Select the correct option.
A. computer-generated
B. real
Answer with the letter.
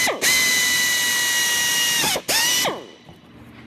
B